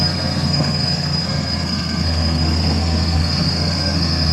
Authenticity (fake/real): fake